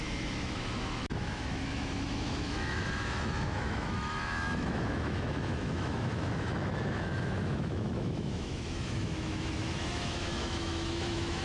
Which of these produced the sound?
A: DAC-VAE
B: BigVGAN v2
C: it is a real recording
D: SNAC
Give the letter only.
A